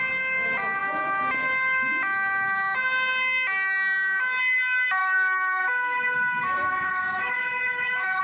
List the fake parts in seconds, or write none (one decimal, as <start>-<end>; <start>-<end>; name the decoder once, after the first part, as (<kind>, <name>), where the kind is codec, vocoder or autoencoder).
5.0-8.2 (autoencoder, DAC-VAE)